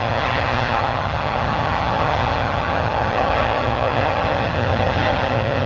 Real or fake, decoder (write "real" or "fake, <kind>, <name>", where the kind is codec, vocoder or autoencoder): fake, vocoder, HiFi-GAN